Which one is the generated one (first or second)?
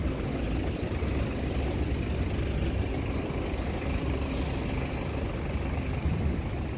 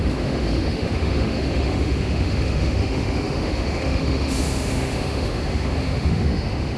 second